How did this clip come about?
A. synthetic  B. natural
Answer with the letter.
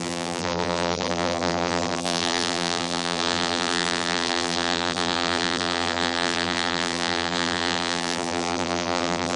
A